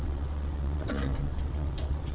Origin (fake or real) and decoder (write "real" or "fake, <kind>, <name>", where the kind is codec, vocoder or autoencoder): fake, vocoder, WaveNeXt